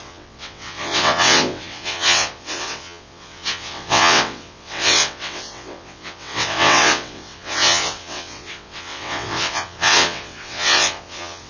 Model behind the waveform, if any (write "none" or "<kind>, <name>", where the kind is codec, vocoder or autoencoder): vocoder, WaveNeXt